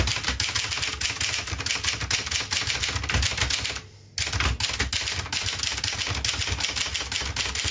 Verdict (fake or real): real